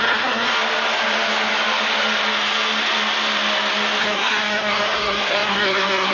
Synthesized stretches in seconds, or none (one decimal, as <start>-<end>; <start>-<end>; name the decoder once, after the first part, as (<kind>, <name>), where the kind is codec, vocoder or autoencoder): 0.0-0.5 (codec, SNAC); 4.0-6.1